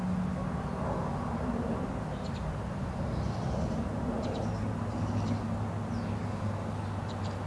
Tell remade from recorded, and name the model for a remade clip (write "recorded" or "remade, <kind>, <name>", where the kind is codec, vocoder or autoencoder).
recorded